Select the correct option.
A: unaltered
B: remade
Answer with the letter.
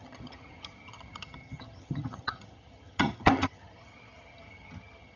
B